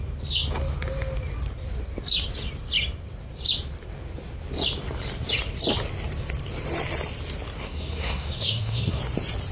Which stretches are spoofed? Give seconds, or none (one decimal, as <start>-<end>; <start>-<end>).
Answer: 7.6-9.0